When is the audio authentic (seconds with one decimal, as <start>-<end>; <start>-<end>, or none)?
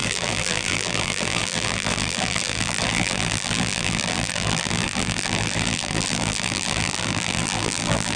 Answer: none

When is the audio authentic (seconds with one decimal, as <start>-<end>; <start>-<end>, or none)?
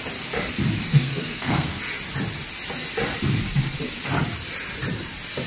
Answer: 0.0-0.9; 1.8-5.5